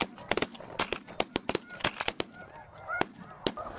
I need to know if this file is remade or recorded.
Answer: recorded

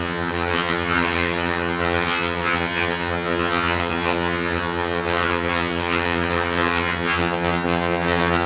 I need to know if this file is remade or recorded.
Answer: remade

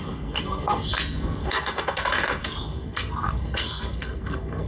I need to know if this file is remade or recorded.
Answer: remade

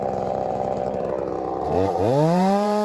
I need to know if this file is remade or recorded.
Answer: remade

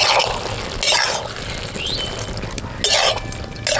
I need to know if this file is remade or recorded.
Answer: recorded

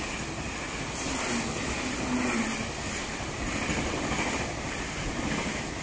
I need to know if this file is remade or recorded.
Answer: recorded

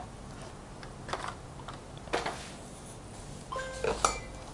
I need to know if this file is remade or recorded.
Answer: recorded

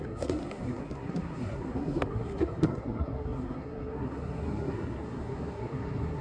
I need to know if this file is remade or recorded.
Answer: remade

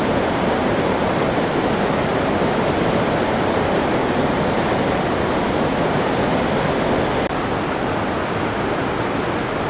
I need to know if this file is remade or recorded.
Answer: recorded